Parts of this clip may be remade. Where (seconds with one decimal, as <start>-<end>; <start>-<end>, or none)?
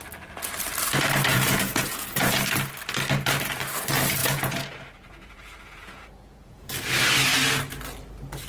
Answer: 1.3-2.3; 4.2-6.7